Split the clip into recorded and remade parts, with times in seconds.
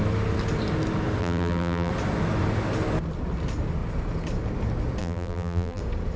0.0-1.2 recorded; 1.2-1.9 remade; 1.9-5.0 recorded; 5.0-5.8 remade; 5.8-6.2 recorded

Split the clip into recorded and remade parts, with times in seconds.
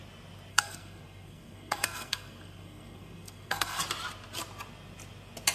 0.0-0.5 recorded; 0.5-3.8 remade; 3.8-5.5 recorded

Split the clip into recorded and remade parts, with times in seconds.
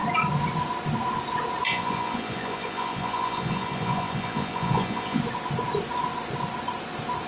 0.0-1.7 recorded; 1.7-5.2 remade; 5.2-7.3 recorded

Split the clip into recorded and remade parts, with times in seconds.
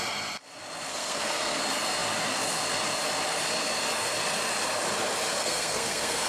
0.0-0.9 recorded; 0.9-1.6 remade; 1.6-5.4 recorded; 5.4-6.3 remade